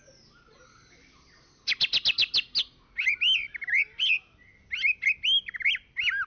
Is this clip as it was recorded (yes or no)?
yes